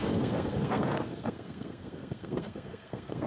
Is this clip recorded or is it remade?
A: remade